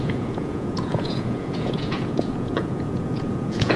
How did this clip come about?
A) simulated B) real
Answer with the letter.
A